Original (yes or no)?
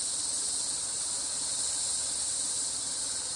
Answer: yes